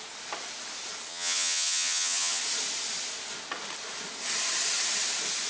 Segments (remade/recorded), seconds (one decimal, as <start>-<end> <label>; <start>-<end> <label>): 0.0-1.1 recorded; 1.1-2.4 remade; 2.4-5.5 recorded